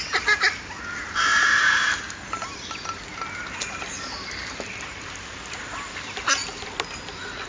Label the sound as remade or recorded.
recorded